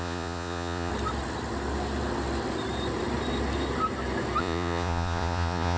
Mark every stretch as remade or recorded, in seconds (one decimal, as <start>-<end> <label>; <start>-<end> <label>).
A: 0.0-0.9 remade; 0.9-4.4 recorded; 4.4-5.8 remade